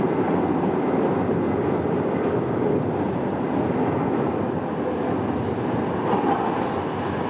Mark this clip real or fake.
real